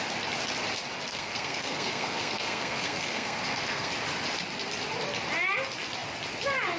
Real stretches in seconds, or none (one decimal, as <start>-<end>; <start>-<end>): 0.0-1.1; 3.9-6.8